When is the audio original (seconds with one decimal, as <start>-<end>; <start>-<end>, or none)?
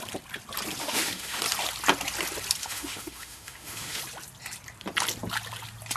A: 0.0-0.8; 1.4-2.6; 4.0-6.0